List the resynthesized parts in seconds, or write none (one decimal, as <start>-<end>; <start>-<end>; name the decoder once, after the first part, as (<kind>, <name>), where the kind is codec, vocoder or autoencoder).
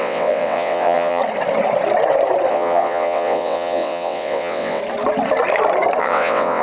0.0-1.2 (vocoder, WaveNeXt); 2.5-4.8; 6.0-6.6